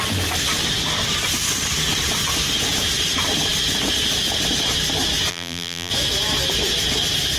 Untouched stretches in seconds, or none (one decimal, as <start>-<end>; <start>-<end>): 0.0-5.3; 5.9-7.4